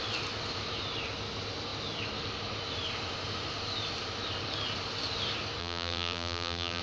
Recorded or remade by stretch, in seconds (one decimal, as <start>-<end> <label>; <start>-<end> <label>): 0.0-5.6 recorded; 5.6-6.8 remade